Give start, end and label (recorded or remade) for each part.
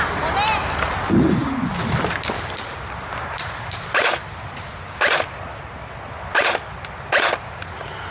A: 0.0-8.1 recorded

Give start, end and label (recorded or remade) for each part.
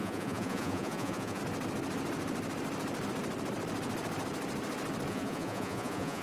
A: 0.0-1.4 remade; 1.4-5.1 recorded; 5.1-6.2 remade